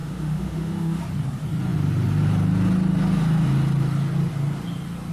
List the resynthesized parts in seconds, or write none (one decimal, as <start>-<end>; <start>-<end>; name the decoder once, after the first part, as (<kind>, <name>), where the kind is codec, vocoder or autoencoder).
0.0-1.0 (autoencoder, DAC-VAE)